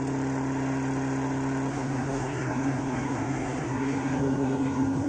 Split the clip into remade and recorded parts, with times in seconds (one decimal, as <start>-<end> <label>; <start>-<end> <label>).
0.0-1.7 recorded; 1.7-5.1 remade